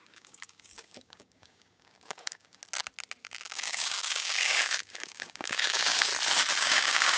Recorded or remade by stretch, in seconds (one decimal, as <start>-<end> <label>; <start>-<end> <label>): 0.0-2.6 remade; 2.6-3.2 recorded; 3.2-6.1 remade; 6.1-6.6 recorded; 6.6-7.2 remade